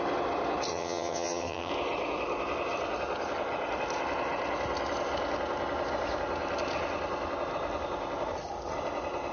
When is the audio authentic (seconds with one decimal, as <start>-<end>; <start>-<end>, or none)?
0.0-0.7; 1.7-9.3